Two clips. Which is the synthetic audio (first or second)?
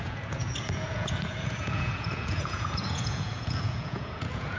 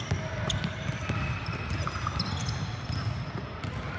first